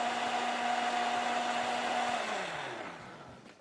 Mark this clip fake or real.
real